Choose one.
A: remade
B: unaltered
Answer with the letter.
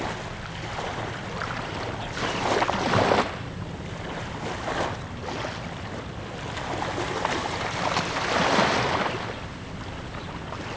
B